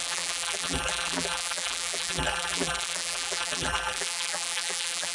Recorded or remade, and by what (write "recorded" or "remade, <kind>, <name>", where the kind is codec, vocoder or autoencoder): remade, vocoder, BigVGAN v2